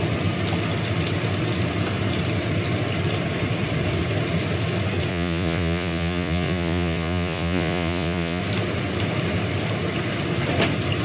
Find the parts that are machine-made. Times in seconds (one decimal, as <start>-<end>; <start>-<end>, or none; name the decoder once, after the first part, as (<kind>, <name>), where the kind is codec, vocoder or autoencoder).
5.1-8.4 (vocoder, Vocos)